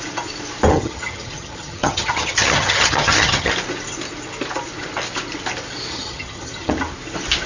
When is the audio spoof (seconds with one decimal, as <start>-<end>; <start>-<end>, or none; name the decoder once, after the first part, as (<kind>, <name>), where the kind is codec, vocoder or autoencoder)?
0.7-3.5 (vocoder, HiFi-GAN); 5.9-6.7